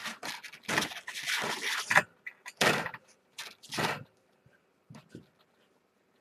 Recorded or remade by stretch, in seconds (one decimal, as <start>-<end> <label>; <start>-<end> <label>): 0.0-6.2 recorded